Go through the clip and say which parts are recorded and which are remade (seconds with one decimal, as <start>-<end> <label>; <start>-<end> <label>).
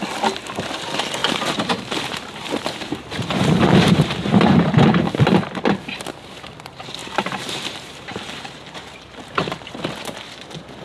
0.0-1.2 recorded; 1.2-5.6 remade; 5.6-7.0 recorded; 7.0-9.7 remade; 9.7-10.8 recorded